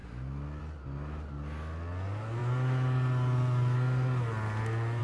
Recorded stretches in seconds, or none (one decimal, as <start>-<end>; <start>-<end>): 0.0-5.0